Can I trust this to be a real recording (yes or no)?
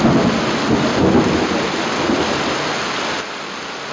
yes